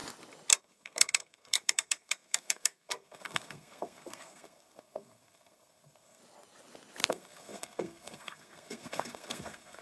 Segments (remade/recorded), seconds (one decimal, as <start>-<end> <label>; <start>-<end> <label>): 0.0-0.6 recorded; 0.6-6.2 remade; 6.2-7.1 recorded; 7.1-9.8 remade